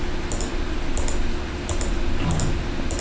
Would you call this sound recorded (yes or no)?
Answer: yes